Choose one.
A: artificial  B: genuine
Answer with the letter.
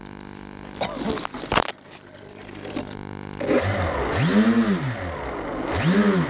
B